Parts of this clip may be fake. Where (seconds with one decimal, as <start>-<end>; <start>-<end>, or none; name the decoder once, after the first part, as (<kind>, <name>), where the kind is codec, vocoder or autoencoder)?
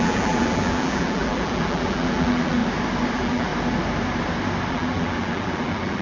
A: 0.0-2.6 (vocoder, BigVGAN v2); 3.1-3.5; 4.7-6.0